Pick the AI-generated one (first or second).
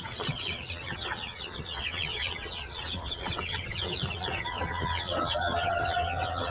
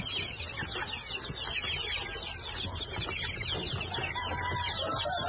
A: first